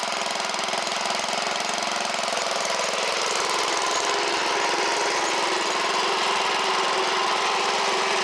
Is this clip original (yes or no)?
yes